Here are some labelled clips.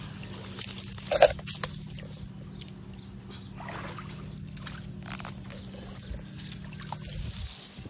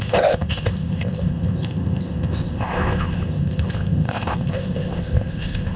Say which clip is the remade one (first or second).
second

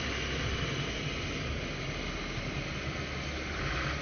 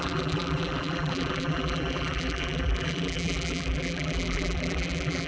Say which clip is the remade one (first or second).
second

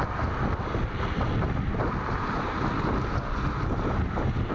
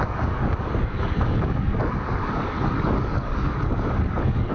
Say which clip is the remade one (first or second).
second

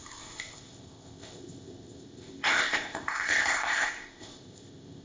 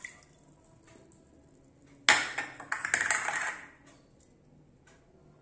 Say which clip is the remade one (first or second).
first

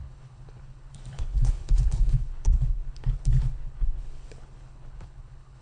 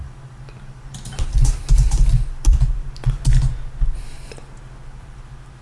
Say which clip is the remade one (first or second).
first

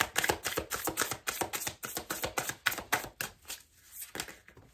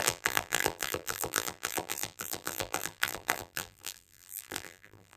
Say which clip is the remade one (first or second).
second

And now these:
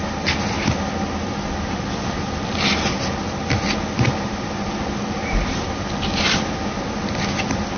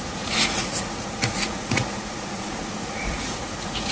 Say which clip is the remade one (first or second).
second